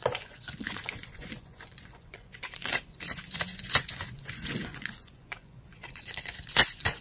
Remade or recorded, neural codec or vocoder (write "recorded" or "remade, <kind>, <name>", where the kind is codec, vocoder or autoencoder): remade, vocoder, Vocos